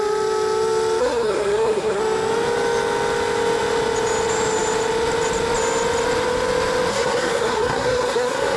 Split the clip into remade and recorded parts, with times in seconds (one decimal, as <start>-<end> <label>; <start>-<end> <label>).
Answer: 0.0-1.0 recorded; 1.0-2.0 remade; 2.0-6.9 recorded; 6.9-8.6 remade